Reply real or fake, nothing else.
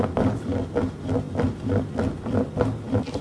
real